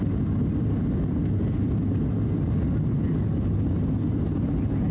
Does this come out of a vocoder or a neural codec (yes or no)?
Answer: no